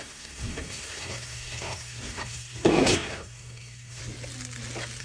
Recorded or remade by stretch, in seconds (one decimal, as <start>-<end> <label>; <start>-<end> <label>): 0.0-4.0 remade; 4.0-5.0 recorded